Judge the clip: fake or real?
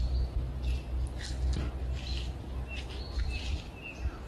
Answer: real